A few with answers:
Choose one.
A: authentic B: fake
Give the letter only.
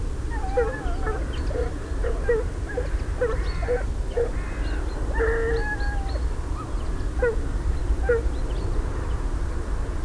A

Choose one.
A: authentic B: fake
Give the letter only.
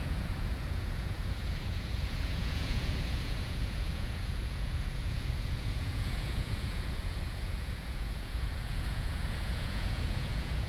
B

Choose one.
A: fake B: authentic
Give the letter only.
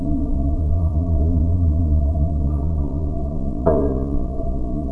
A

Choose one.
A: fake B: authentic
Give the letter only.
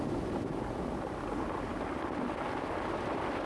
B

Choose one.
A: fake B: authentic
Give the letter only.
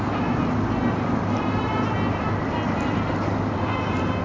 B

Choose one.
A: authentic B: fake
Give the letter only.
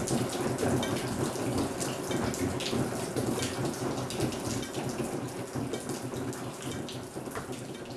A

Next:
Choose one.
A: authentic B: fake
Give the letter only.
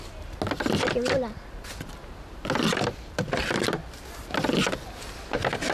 A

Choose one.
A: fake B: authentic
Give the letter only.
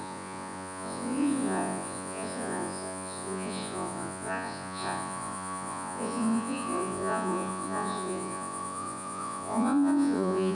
A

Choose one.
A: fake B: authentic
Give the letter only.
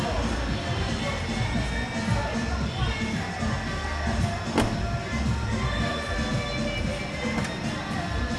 B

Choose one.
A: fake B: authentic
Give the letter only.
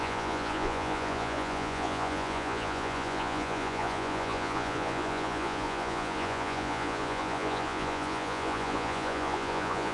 A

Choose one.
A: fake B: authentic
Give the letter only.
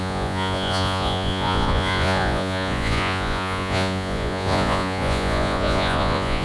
A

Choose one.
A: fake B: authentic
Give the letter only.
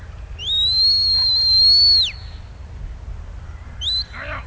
B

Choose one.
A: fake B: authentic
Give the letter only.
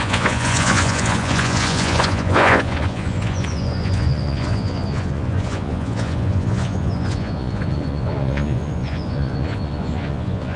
A